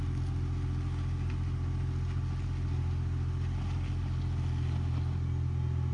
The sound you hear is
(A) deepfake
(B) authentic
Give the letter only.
B